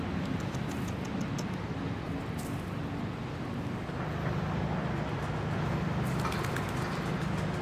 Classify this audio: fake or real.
real